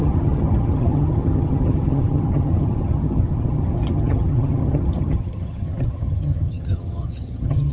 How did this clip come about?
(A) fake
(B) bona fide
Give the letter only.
A